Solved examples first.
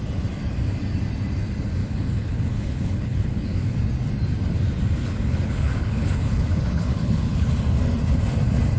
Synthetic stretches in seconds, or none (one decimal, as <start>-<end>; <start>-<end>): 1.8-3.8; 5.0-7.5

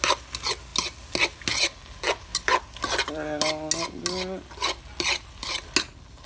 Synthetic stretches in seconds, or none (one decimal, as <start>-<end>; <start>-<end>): none

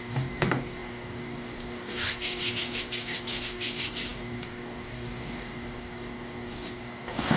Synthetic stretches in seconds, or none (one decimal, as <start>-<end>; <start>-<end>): 0.0-7.4

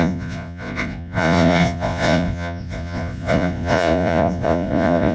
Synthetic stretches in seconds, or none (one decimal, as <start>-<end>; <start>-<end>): 0.0-5.1

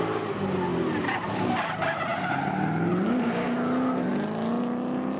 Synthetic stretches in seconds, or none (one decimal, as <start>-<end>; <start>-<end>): 0.7-1.5

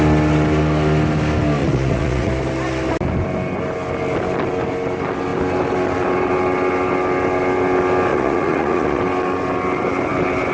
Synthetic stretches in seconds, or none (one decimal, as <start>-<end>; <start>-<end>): 1.6-2.3; 8.1-9.0